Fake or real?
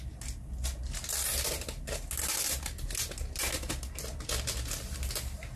real